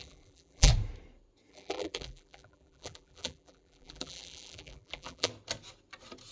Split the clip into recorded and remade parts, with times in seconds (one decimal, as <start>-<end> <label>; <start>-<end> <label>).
0.0-0.7 remade; 0.7-1.5 recorded; 1.5-5.3 remade; 5.3-6.3 recorded